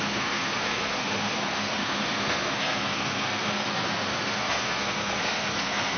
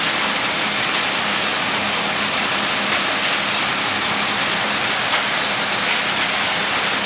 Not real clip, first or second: first